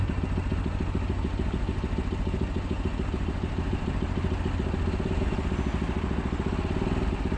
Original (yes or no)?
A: yes